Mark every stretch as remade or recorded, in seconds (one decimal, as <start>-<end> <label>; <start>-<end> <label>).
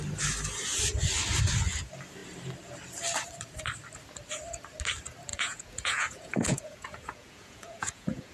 0.0-5.3 recorded; 5.3-8.3 remade